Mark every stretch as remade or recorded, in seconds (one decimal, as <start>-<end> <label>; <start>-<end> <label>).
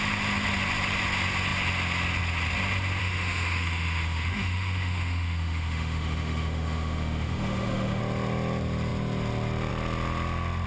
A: 0.0-3.0 recorded; 3.0-8.0 remade; 8.0-10.7 recorded